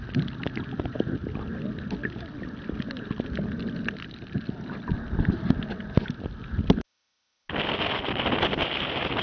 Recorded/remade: recorded